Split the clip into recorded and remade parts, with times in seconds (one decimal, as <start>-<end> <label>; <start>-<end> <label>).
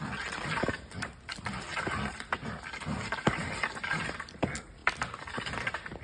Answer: 0.0-6.0 recorded